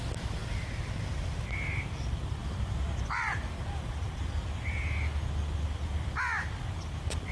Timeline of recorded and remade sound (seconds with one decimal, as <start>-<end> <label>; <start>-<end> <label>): 0.0-2.4 recorded; 2.4-4.2 remade; 4.2-7.3 recorded

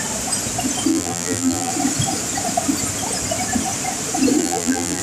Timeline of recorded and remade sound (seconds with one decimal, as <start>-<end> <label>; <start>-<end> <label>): 0.0-0.9 recorded; 0.9-1.7 remade; 1.7-4.4 recorded; 4.4-5.0 remade

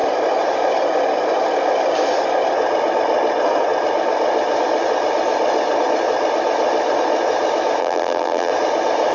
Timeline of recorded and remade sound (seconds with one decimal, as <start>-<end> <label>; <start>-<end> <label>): 0.0-7.8 recorded; 7.8-8.5 remade; 8.5-9.1 recorded